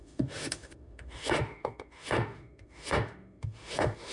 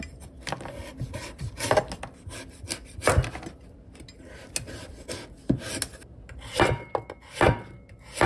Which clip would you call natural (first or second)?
second